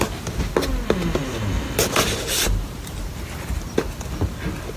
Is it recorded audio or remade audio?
recorded